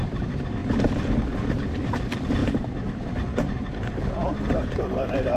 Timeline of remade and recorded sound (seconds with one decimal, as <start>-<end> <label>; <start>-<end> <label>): 0.0-0.6 recorded; 0.6-1.8 remade; 1.8-2.4 recorded; 2.4-5.4 remade